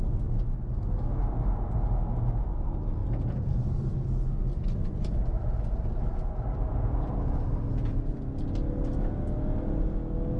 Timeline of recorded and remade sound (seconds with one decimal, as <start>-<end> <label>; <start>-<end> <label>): 0.0-10.4 recorded